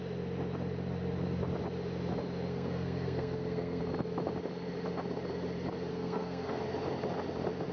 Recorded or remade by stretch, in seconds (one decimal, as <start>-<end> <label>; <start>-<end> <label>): 0.0-2.5 recorded; 2.5-3.8 remade; 3.8-5.9 recorded; 5.9-6.6 remade; 6.6-7.7 recorded